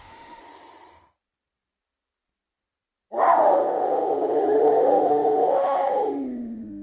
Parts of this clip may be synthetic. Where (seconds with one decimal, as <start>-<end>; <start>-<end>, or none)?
0.0-0.4; 3.3-6.8

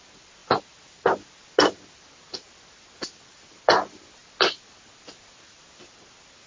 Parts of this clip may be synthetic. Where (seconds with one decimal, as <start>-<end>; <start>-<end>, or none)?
none

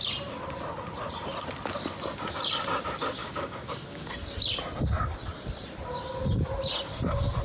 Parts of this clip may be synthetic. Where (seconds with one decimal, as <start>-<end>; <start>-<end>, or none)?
3.2-4.1

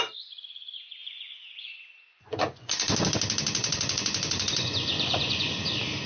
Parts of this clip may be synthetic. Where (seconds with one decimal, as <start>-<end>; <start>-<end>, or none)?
1.0-2.7; 3.6-5.5